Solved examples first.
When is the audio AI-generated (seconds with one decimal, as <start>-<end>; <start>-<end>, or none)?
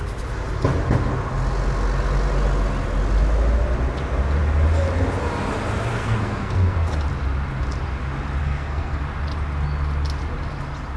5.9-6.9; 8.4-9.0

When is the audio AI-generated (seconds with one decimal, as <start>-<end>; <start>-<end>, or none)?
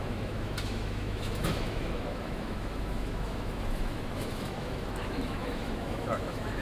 0.0-6.6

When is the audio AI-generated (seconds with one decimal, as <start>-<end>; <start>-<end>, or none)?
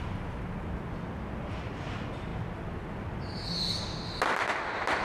none